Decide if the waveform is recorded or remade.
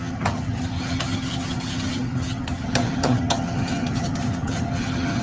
remade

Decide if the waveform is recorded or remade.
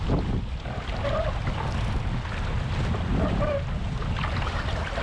recorded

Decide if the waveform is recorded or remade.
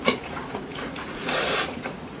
remade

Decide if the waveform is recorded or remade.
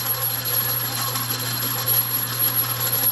recorded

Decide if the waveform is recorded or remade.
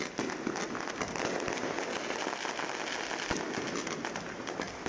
recorded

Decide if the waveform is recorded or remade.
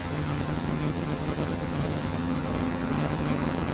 remade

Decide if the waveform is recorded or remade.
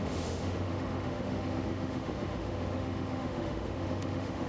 remade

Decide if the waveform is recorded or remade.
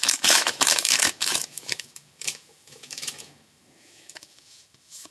remade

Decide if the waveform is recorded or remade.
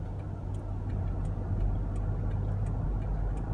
recorded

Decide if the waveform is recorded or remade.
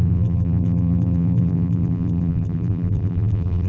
remade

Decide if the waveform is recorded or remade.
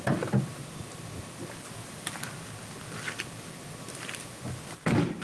recorded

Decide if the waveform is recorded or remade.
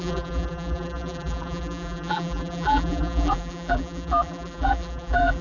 remade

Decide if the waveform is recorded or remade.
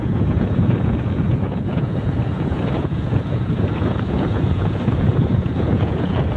remade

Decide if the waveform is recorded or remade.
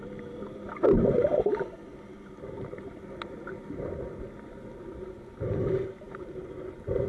recorded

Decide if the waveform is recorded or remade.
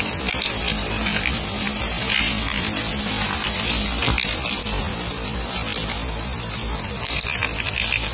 recorded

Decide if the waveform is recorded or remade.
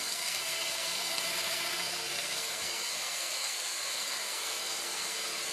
remade